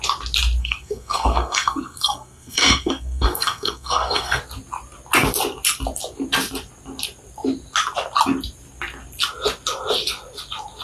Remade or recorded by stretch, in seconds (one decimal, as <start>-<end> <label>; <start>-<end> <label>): 0.0-0.6 recorded; 0.6-4.4 remade; 4.4-10.8 recorded